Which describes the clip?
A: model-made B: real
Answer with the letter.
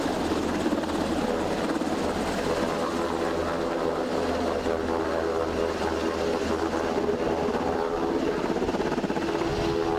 B